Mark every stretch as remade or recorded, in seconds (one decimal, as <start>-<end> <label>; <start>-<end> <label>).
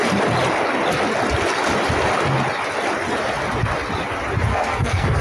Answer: 0.0-4.5 recorded; 4.5-5.2 remade